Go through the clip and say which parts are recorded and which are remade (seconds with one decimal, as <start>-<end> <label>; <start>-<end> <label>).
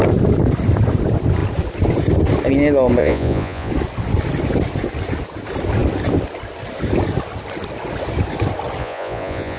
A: 0.0-3.0 recorded; 3.0-3.7 remade; 3.7-8.8 recorded; 8.8-9.6 remade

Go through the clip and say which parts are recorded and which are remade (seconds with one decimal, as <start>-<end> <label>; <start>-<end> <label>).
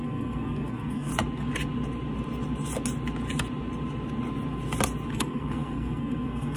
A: 0.0-1.1 remade; 1.1-5.1 recorded; 5.1-6.6 remade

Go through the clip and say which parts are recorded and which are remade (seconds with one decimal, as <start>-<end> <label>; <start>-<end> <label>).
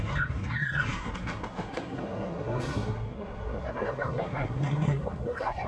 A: 0.0-5.7 remade